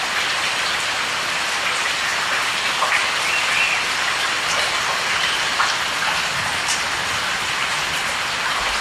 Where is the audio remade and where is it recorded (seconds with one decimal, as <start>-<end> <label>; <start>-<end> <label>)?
0.0-8.8 recorded